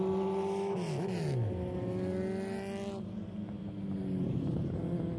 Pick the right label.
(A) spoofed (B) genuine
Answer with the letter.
B